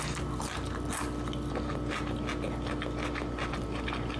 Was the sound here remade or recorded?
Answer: recorded